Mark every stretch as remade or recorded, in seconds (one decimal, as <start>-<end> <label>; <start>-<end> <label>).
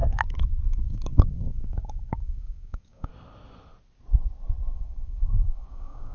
0.0-0.7 recorded; 0.7-3.1 remade; 3.1-4.7 recorded; 4.7-6.1 remade